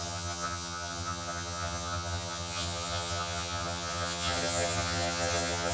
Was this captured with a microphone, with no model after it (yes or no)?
no